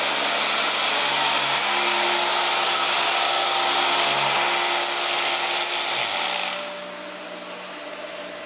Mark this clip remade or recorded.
recorded